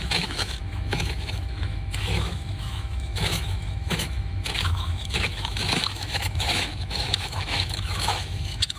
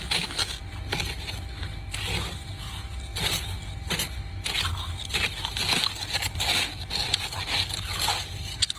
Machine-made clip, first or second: first